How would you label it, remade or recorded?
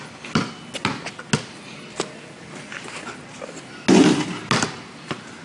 recorded